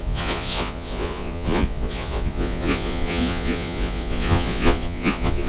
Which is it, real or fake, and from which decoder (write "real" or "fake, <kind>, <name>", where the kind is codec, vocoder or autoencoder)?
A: fake, vocoder, Vocos